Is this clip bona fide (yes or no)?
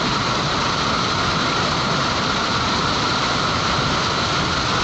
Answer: yes